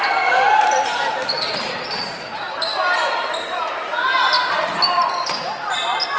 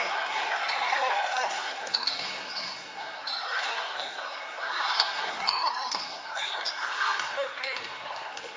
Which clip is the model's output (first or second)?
second